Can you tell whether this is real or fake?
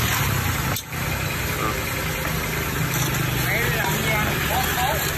real